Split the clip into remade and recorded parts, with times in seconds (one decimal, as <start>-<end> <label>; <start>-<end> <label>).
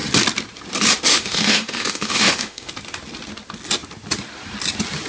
0.0-1.1 recorded; 1.1-2.7 remade; 2.7-5.1 recorded